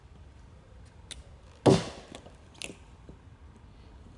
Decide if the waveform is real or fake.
real